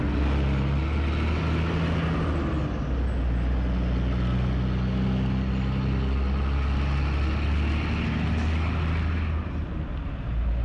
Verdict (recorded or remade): recorded